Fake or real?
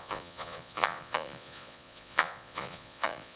fake